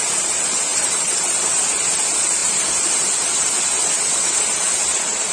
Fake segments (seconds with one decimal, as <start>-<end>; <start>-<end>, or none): 0.7-1.4